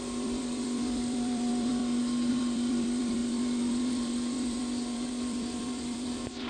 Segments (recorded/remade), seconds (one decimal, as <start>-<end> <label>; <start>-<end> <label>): 0.0-1.8 remade; 1.8-2.3 recorded; 2.3-6.5 remade